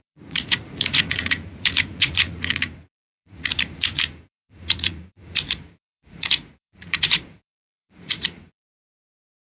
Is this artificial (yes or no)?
yes